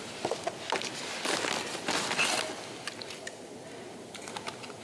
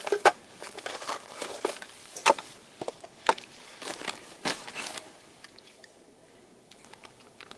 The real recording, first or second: first